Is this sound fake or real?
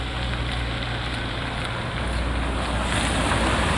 real